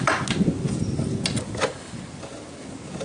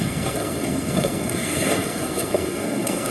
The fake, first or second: second